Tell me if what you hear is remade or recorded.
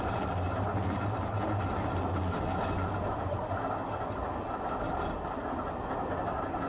recorded